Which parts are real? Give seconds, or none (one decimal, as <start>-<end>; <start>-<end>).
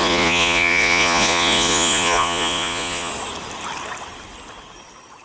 3.1-5.2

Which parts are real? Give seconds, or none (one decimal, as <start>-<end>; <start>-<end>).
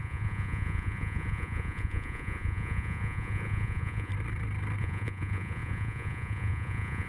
4.1-4.8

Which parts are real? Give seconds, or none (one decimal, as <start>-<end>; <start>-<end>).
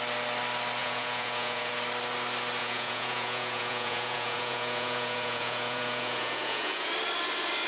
0.0-0.8; 1.7-2.6; 6.9-7.7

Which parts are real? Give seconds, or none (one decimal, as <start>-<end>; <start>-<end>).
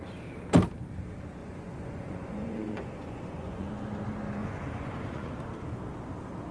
0.0-1.4; 3.7-4.4; 5.3-6.5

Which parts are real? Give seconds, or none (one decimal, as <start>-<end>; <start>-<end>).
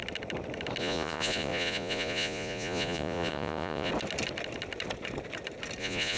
0.0-0.8; 3.9-5.8